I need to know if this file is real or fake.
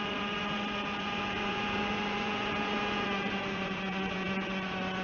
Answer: fake